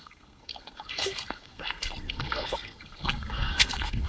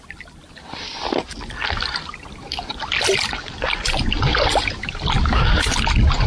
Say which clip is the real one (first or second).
second